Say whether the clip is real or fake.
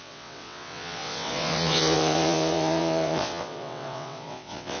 fake